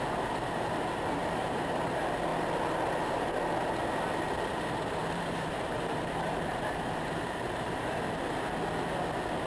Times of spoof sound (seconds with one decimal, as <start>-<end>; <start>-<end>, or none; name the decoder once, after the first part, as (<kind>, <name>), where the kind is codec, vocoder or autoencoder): 1.2-1.7 (vocoder, BigVGAN v2); 5.0-8.2